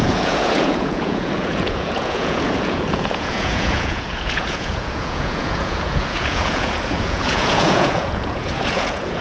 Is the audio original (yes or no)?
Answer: no